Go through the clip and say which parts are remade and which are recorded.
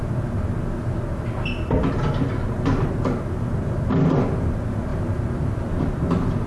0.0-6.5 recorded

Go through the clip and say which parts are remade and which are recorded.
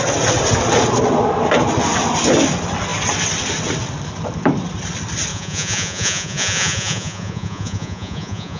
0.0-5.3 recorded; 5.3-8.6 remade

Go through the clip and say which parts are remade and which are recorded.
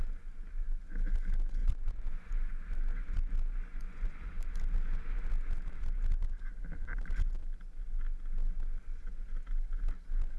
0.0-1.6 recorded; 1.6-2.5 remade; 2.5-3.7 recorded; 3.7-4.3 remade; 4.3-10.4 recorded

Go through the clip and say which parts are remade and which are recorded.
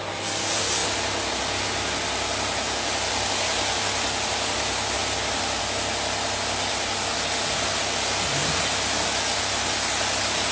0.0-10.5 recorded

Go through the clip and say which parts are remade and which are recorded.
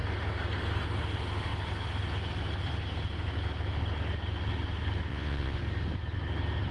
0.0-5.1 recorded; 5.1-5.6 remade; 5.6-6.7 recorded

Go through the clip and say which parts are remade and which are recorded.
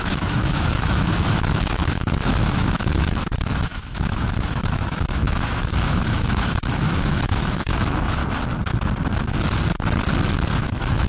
0.0-8.2 remade; 8.2-10.6 recorded; 10.6-11.1 remade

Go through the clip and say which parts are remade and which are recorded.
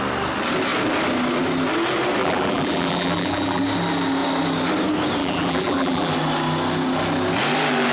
0.0-2.2 recorded; 2.2-3.6 remade; 3.6-5.2 recorded; 5.2-6.1 remade; 6.1-7.9 recorded